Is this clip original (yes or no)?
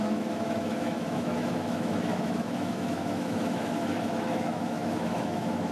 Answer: no